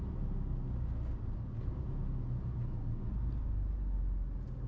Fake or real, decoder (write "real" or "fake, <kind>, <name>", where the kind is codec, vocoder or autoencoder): real